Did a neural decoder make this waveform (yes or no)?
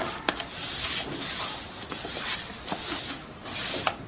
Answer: no